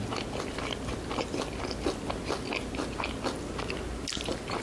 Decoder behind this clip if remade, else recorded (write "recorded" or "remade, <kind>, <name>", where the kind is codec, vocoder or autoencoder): recorded